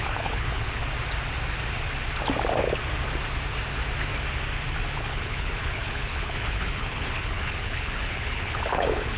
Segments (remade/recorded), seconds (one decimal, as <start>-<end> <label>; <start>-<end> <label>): 0.0-0.8 remade; 0.8-4.9 recorded; 4.9-9.2 remade